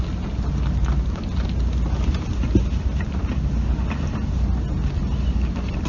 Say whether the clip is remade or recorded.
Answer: recorded